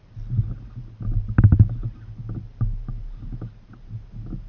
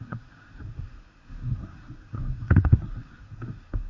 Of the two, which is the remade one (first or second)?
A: second